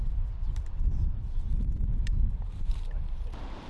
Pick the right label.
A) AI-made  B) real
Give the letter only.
A